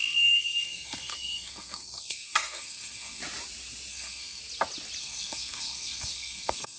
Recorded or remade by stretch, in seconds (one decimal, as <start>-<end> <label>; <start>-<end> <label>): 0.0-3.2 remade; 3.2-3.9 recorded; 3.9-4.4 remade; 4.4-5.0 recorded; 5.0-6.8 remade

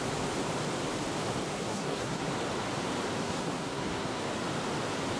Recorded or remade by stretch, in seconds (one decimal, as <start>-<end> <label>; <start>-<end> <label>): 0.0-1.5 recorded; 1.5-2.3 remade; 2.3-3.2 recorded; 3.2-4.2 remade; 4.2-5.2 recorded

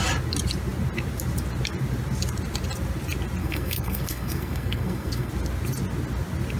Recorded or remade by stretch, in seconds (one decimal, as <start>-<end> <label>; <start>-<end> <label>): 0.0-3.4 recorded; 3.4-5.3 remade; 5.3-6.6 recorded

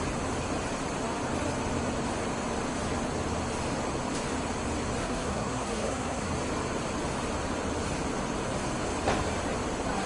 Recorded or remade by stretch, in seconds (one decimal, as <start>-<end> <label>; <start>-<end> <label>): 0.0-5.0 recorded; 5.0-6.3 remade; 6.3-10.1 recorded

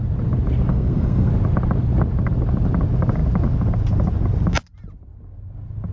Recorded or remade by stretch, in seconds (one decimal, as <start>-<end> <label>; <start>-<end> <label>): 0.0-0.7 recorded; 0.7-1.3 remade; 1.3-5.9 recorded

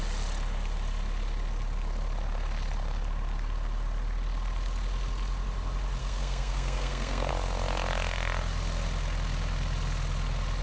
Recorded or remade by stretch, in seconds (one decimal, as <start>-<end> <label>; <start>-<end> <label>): 0.0-6.0 recorded; 6.0-7.3 remade; 7.3-10.6 recorded

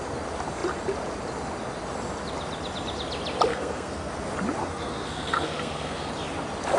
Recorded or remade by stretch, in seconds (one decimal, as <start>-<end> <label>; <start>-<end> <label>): 0.0-3.5 recorded; 3.5-4.1 remade; 4.1-4.6 recorded; 4.6-6.1 remade; 6.1-6.8 recorded